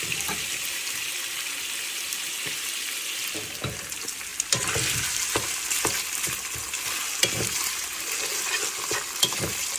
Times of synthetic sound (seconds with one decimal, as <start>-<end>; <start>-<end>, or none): none